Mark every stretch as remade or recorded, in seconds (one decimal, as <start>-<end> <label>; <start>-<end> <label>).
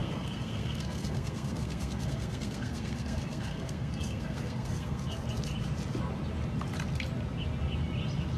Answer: 0.0-5.0 remade; 5.0-8.4 recorded